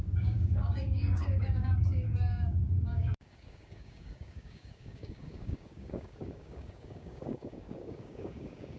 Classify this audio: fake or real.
fake